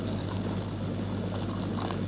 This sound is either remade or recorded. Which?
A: recorded